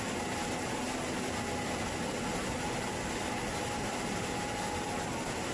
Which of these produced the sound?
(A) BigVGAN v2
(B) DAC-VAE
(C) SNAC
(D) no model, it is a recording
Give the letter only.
D